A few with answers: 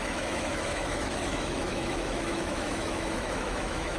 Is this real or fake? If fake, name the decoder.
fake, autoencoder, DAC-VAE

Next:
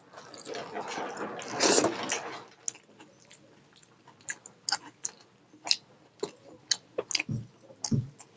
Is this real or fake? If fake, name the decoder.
real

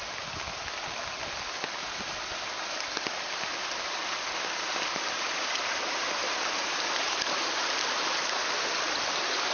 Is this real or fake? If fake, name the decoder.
real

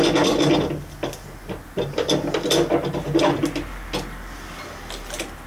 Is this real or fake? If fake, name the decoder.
real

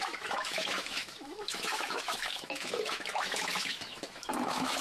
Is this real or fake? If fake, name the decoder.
fake, autoencoder, DAC-VAE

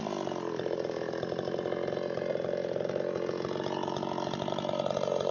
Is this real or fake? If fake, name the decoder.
real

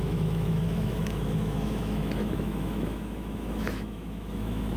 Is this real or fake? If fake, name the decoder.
fake, autoencoder, DAC-VAE